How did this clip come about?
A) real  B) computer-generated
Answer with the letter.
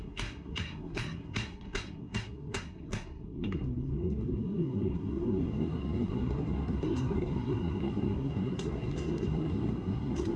B